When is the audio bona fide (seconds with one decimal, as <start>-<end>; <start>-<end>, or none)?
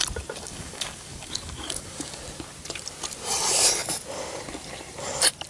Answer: 0.0-0.4; 2.2-5.5